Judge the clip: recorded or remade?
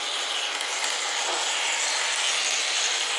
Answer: recorded